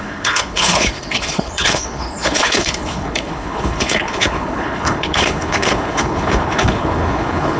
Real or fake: fake